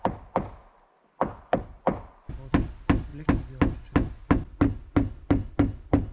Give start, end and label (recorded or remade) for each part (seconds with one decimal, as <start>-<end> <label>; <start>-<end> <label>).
0.0-6.1 recorded